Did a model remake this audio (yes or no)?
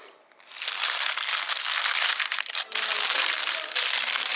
no